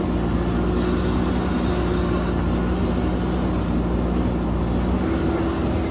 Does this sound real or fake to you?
real